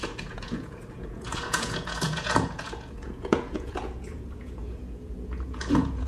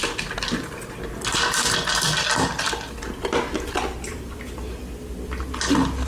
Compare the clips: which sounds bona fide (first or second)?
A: second